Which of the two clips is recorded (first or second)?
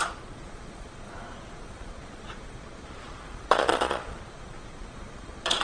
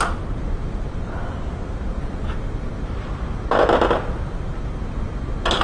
second